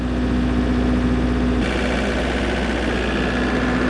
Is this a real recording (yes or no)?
yes